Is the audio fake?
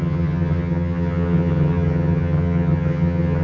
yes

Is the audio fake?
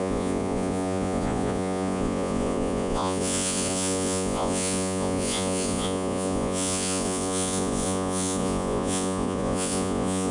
yes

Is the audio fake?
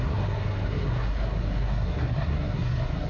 yes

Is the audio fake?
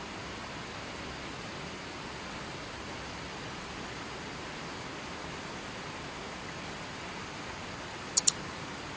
no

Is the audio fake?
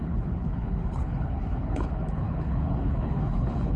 yes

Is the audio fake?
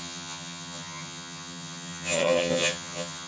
yes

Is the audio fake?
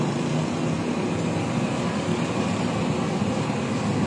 no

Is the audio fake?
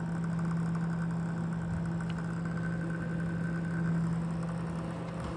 no